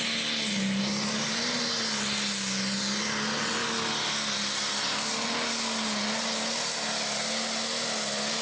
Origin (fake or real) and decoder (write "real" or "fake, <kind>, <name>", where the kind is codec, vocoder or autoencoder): real